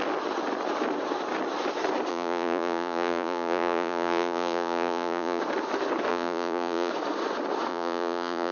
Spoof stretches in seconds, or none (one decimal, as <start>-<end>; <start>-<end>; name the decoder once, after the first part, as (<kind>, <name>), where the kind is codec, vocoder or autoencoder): 2.1-5.4 (vocoder, Vocos); 6.1-6.9; 7.7-8.5